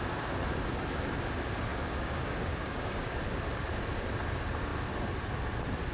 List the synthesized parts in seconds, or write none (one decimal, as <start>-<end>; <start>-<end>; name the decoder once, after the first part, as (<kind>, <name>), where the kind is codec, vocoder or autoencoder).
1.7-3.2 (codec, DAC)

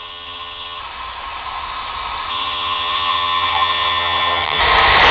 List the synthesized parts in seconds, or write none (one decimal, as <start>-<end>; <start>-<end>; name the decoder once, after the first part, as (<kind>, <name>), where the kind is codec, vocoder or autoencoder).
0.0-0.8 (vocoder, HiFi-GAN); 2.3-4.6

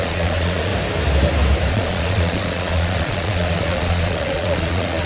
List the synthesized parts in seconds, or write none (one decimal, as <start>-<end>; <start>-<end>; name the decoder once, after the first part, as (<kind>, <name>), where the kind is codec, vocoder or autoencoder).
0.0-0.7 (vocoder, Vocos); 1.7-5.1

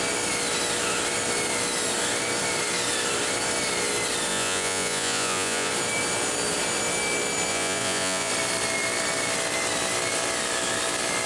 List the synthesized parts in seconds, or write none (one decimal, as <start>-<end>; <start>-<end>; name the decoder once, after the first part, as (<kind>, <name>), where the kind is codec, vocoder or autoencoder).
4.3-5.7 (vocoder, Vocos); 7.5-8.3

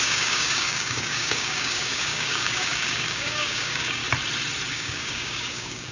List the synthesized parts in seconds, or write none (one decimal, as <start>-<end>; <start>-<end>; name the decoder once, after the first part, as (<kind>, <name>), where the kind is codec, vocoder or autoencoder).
0.0-4.0 (codec, DAC); 4.7-5.9

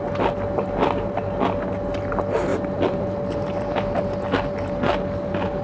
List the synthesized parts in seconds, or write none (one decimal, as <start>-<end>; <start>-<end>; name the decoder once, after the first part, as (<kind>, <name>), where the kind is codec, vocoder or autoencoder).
2.5-4.0 (vocoder, BigVGAN v2)